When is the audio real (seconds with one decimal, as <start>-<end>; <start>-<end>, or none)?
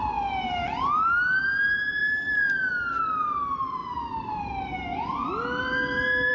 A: 0.0-6.3